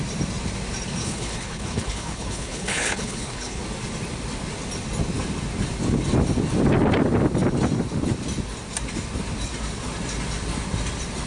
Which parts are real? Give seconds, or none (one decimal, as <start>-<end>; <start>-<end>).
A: 0.0-1.0; 3.6-11.3

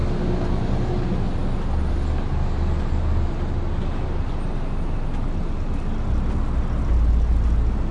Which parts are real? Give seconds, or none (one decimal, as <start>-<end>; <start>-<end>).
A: 0.0-7.9